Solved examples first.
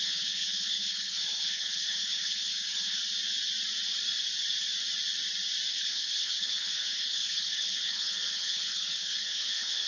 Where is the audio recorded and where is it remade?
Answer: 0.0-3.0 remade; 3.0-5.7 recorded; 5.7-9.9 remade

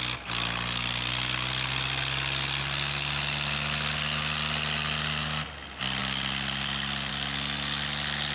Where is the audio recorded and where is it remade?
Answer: 0.0-8.3 recorded